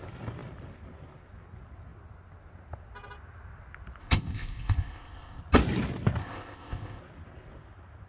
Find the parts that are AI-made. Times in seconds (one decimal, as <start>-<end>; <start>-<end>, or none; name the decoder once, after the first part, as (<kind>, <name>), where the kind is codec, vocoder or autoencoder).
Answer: 4.0-5.4 (codec, ZipCodec); 6.2-7.0